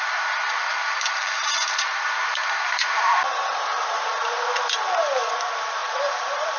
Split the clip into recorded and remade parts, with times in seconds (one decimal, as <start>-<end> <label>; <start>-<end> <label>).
0.0-6.6 remade